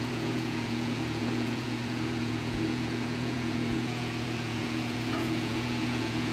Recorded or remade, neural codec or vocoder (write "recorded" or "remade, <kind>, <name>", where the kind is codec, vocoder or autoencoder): remade, vocoder, Vocos